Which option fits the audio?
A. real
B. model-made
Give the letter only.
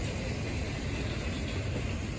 A